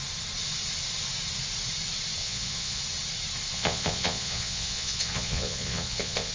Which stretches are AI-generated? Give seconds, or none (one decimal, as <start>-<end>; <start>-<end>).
2.2-2.8; 3.5-6.3